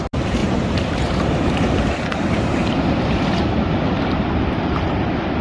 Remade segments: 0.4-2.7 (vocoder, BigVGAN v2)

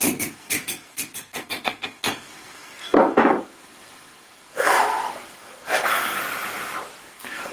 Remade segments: 0.0-6.2 (codec, SNAC); 7.0-7.5

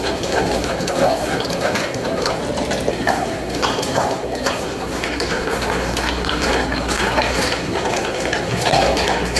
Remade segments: 0.0-2.4 (codec, SNAC); 2.9-9.4

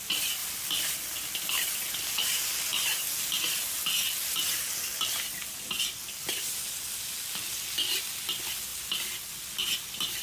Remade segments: none

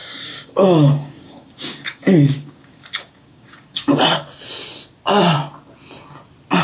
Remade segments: 0.0-4.0 (codec, DAC)